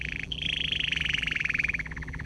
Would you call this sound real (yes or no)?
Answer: no